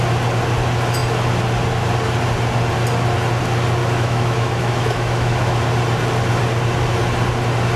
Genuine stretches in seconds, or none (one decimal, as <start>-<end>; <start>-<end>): 0.0-3.8; 5.6-7.8

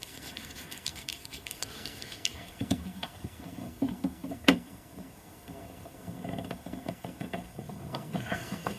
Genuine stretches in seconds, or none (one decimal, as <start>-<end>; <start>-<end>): none